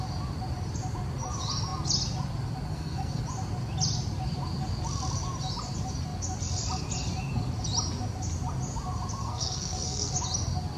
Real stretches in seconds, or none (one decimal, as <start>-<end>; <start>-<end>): 0.0-2.7; 3.2-9.2; 10.1-10.8